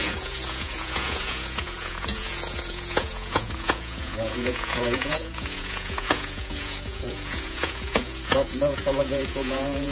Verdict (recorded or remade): remade